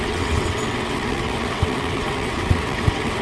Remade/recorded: remade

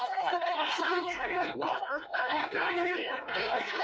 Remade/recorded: remade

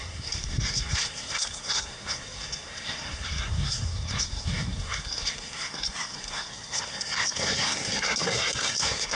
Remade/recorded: remade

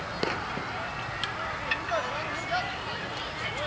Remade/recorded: recorded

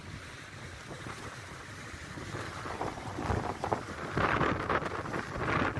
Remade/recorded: recorded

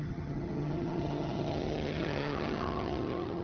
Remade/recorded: remade